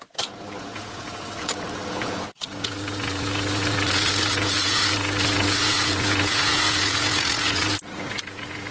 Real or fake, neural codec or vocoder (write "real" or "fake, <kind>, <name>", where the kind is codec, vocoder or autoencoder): fake, vocoder, Vocos